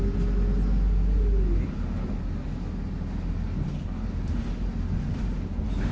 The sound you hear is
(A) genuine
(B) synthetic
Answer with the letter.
A